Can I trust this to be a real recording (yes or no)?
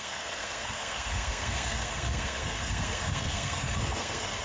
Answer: no